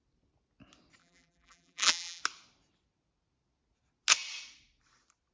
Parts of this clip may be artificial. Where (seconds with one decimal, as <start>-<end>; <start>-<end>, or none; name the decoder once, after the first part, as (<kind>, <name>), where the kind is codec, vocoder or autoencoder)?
1.0-2.2 (vocoder, BigVGAN v2)